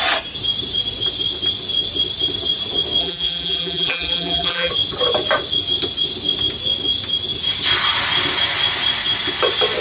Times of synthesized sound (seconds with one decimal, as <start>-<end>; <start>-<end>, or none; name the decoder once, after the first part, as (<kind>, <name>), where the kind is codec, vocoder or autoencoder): 3.0-4.7 (vocoder, BigVGAN v2)